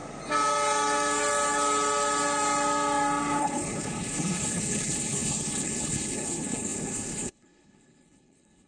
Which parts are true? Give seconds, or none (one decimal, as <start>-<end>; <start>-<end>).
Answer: 0.0-3.4